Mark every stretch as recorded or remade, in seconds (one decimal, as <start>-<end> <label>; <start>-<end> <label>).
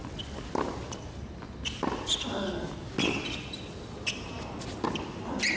0.0-5.6 recorded